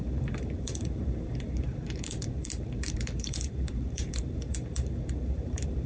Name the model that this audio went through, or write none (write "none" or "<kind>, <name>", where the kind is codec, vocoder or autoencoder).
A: vocoder, BigVGAN v2